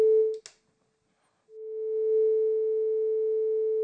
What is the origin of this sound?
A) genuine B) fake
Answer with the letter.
A